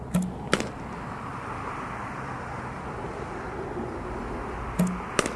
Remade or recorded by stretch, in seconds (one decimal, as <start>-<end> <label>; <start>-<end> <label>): 0.0-1.3 recorded; 1.3-4.5 remade; 4.5-5.4 recorded